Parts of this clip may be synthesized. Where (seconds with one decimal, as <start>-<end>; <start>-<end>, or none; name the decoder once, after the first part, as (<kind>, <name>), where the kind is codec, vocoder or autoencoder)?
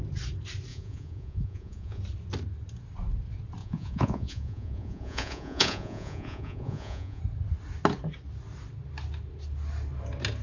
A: 0.7-2.0 (vocoder, Vocos); 3.6-7.2